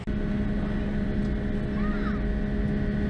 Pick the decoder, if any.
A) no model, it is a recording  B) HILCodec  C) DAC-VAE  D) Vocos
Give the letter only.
A